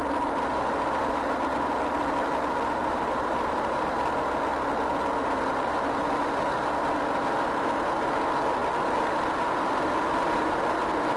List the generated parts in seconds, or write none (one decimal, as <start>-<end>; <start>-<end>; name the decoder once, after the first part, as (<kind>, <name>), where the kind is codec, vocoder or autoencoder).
2.8-4.0 (vocoder, BigVGAN v2)